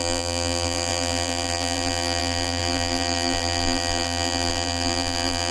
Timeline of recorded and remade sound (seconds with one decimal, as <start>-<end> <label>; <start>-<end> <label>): 0.0-5.5 remade